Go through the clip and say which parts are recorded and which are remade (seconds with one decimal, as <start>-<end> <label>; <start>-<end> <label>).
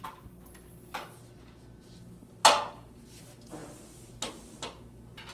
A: 0.0-5.3 recorded